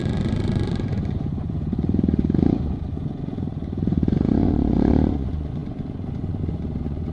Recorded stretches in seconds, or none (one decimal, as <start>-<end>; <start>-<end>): none